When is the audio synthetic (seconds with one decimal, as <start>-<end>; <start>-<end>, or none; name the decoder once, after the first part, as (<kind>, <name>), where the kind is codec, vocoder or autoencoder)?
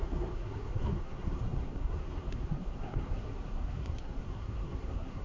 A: 0.0-5.2 (codec, SNAC)